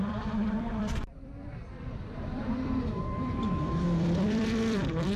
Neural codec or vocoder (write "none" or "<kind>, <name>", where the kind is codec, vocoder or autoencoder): vocoder, BigVGAN v2